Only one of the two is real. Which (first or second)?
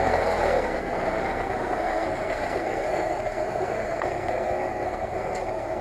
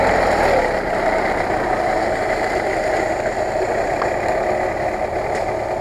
second